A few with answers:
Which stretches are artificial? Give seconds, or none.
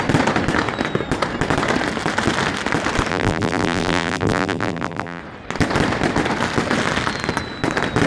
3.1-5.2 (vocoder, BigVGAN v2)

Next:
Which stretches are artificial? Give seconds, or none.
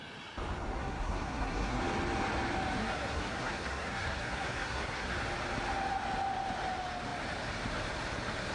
0.8-1.8 (codec, SNAC); 2.8-5.1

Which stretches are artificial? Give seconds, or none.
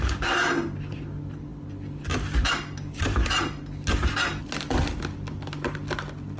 none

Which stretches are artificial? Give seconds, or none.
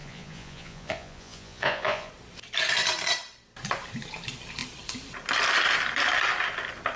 0.0-2.1 (vocoder, Vocos)